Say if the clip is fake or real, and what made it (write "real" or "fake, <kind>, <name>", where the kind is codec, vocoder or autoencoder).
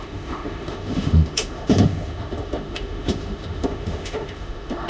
fake, autoencoder, DAC-VAE